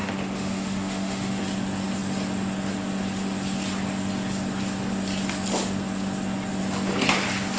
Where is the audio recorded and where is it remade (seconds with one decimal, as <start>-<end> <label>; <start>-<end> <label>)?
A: 0.0-1.4 remade; 1.4-7.6 recorded

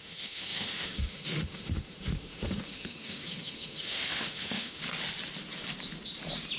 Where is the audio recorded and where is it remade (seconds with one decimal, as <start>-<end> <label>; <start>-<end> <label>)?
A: 0.0-4.8 remade; 4.8-6.6 recorded

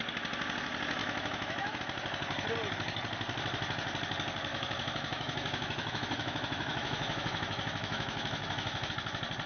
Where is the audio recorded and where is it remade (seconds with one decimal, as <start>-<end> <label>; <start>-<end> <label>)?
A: 0.0-1.0 recorded; 1.0-1.8 remade; 1.8-4.5 recorded; 4.5-8.9 remade; 8.9-9.5 recorded